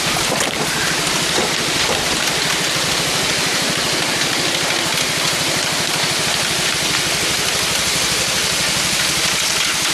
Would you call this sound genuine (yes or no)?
yes